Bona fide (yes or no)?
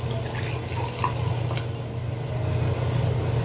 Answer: yes